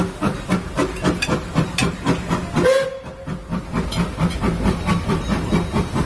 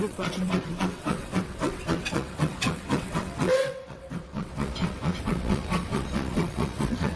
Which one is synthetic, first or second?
second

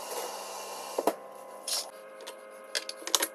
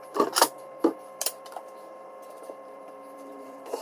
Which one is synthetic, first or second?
second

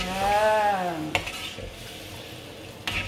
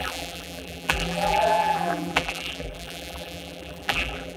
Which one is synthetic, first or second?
second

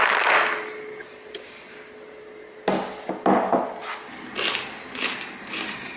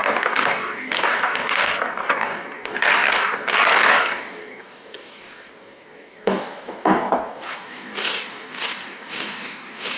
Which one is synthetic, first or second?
second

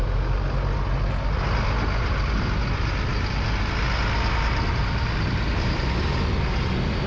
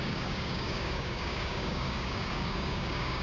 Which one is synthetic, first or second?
second